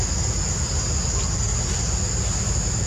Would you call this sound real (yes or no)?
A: yes